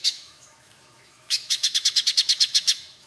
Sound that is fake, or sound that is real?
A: fake